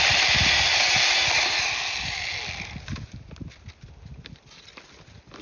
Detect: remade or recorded recorded